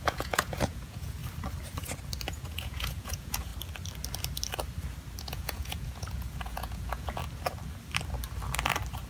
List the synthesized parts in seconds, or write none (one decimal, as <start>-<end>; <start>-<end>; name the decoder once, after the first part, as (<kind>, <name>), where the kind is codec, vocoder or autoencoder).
0.0-1.2 (vocoder, Vocos); 2.3-3.5; 5.2-7.2